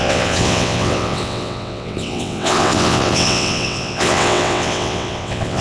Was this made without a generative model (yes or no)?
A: no